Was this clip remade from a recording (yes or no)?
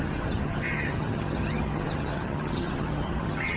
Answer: yes